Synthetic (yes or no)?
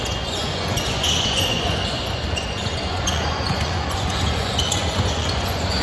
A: yes